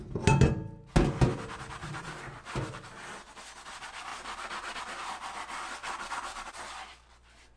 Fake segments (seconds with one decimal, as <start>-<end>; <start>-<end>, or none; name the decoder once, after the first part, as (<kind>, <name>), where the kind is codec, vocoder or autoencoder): 1.8-3.2 (vocoder, BigVGAN v2); 4.1-4.8; 5.8-6.6